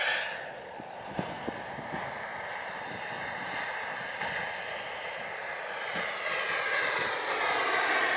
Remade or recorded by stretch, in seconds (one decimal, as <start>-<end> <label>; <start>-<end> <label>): 0.0-8.2 recorded